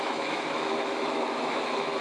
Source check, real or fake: fake